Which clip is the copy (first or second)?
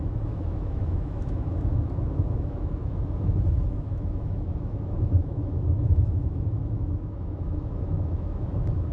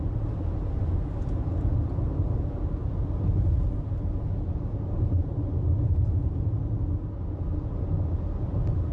first